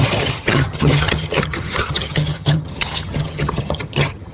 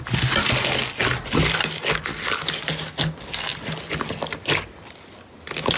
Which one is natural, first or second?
second